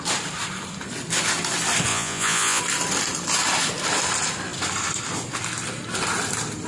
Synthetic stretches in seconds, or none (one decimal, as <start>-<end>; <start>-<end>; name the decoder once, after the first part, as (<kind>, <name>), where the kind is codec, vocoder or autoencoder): 1.9-2.6 (vocoder, Vocos)